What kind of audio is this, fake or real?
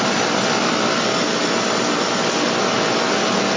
real